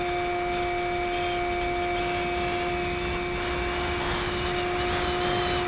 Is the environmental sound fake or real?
real